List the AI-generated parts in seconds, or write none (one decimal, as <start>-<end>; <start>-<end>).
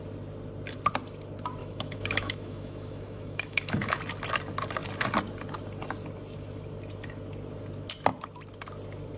1.6-4.0